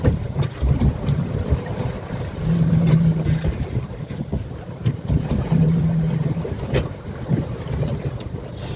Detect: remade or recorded remade